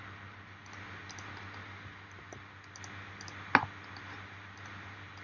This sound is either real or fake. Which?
real